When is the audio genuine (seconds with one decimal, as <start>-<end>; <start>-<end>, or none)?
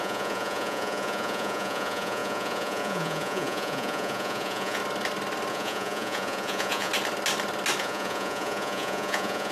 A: 4.8-5.5; 6.9-7.8